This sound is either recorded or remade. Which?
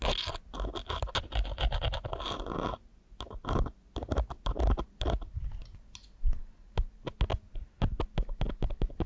recorded